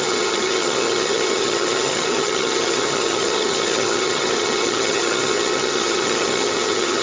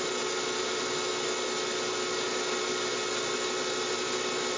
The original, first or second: second